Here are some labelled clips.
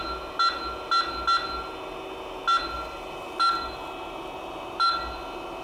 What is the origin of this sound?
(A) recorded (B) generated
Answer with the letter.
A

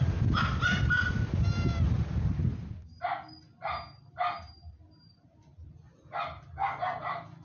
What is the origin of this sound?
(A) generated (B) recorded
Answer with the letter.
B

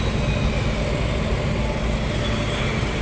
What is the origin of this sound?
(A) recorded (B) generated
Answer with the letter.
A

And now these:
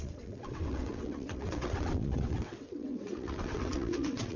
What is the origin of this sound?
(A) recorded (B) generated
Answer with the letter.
B